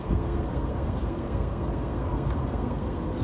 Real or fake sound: fake